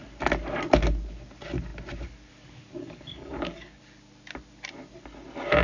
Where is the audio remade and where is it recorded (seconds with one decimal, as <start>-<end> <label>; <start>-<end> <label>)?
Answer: 0.0-2.8 recorded; 2.8-3.8 remade; 3.8-5.6 recorded

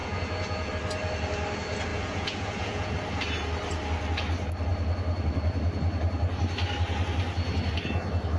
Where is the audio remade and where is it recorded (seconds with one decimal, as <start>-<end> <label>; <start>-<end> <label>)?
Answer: 0.0-0.7 remade; 0.7-1.9 recorded; 1.9-2.9 remade; 2.9-8.4 recorded